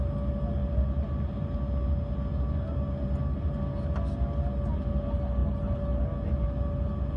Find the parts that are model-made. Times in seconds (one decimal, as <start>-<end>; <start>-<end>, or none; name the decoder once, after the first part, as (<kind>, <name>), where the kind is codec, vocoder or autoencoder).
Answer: none